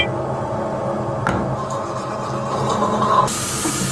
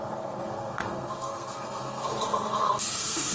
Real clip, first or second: first